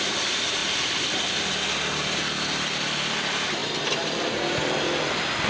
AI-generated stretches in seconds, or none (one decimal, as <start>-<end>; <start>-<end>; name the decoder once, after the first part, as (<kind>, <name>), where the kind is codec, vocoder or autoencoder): none